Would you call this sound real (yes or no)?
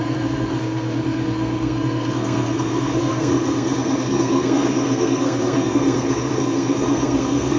no